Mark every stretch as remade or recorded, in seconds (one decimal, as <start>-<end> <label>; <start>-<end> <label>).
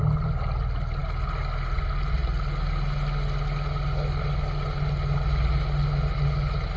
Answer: 0.0-6.8 recorded